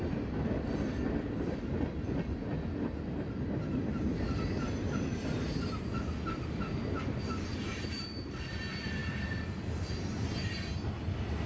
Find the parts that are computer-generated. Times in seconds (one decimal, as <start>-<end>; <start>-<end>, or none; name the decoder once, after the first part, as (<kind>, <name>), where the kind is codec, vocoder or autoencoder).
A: none